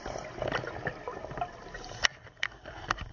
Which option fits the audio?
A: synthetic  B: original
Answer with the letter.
B